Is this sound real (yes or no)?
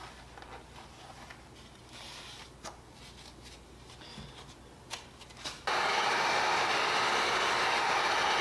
yes